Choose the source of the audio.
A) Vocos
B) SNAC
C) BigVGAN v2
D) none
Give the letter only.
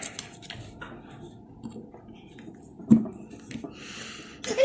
D